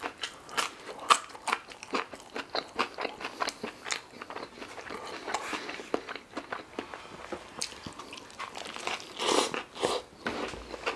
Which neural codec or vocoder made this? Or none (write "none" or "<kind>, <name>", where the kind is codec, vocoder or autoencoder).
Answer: none